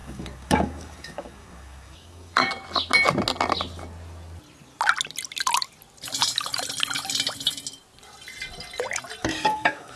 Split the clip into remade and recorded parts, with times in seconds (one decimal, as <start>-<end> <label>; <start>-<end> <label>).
0.0-2.5 remade; 2.5-9.2 recorded; 9.2-10.0 remade

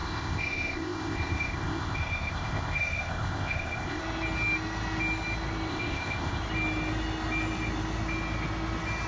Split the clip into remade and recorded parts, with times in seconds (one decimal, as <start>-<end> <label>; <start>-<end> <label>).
0.0-4.0 remade; 4.0-5.7 recorded; 5.7-6.4 remade; 6.4-9.1 recorded

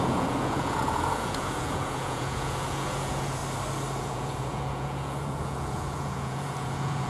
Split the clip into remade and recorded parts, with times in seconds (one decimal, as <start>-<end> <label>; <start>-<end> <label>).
0.0-3.4 remade; 3.4-4.0 recorded; 4.0-7.1 remade